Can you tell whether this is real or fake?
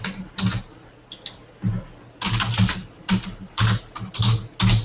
real